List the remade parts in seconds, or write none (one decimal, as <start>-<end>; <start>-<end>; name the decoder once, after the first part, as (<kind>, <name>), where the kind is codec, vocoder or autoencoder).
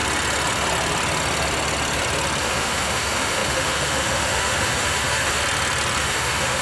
2.4-5.4 (autoencoder, DAC-VAE); 6.0-6.6